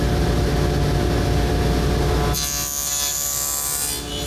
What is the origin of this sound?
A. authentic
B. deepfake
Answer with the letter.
A